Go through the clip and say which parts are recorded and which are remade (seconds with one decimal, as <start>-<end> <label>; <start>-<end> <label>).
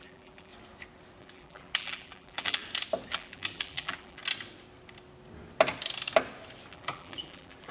0.0-0.5 remade; 0.5-1.2 recorded; 1.2-2.6 remade; 2.6-3.1 recorded; 3.1-4.2 remade; 4.2-6.7 recorded; 6.7-7.7 remade